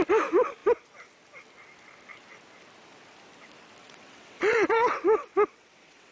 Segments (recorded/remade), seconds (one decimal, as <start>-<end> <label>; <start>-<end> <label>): 0.0-3.8 recorded; 3.8-6.1 remade